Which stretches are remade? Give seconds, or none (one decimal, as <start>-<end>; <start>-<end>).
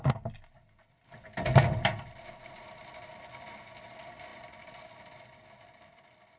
none